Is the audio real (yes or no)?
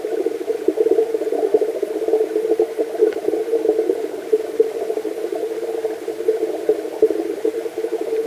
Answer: yes